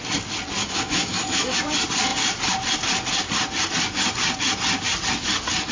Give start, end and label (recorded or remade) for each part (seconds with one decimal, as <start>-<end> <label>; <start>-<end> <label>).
0.0-0.6 recorded; 0.6-1.6 remade; 1.6-5.7 recorded